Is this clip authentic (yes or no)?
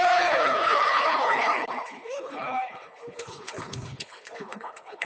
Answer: no